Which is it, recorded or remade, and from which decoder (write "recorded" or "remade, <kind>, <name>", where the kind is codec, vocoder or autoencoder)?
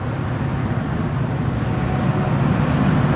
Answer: recorded